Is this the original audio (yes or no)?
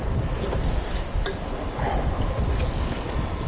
yes